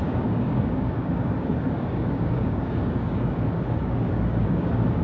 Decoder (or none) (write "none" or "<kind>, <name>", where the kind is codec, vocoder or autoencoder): codec, DAC